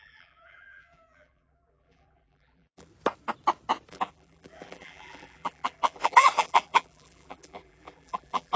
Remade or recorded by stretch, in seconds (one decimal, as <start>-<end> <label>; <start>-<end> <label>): 0.0-2.9 remade; 2.9-3.9 recorded; 3.9-8.6 remade